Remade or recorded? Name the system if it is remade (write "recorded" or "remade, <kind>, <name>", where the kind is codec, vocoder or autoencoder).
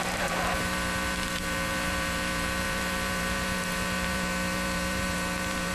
remade, vocoder, BigVGAN v2